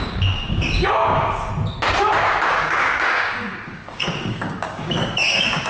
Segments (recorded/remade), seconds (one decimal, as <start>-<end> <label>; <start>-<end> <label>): 0.0-1.5 remade; 1.5-2.5 recorded; 2.5-5.7 remade